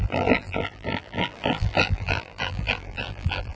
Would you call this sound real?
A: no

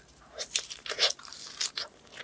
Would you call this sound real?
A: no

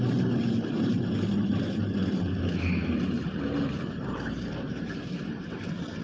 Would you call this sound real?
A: no